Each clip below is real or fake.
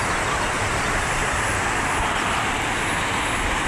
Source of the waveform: real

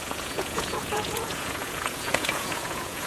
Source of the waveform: fake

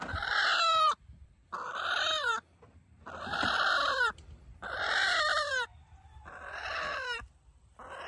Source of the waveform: fake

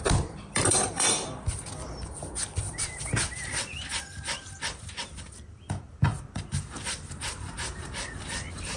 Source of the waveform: fake